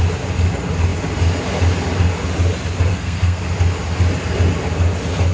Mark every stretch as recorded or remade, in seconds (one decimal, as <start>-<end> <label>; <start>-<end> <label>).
0.0-2.9 recorded; 2.9-3.4 remade; 3.4-5.3 recorded